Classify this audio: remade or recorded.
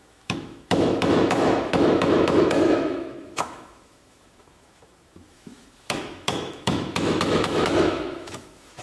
remade